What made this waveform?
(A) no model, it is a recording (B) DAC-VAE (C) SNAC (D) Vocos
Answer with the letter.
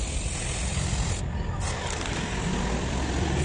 A